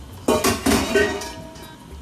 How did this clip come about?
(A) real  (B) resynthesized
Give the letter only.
A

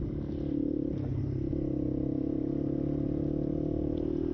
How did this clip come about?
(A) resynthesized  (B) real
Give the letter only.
B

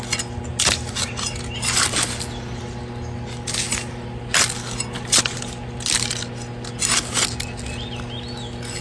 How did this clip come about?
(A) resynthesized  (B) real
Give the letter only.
B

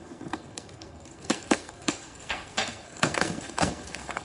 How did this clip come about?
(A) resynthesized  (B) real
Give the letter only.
A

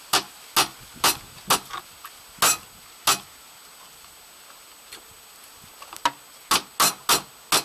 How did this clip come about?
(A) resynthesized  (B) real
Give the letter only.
B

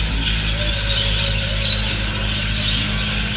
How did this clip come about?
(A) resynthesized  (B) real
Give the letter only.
B